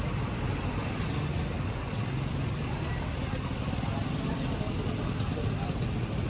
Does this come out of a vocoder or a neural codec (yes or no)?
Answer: no